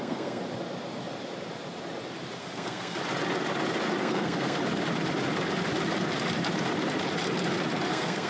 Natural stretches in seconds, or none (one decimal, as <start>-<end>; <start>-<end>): 0.4-2.4; 3.0-4.0; 4.6-7.9